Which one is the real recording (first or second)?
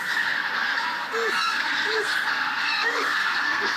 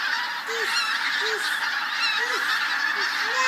second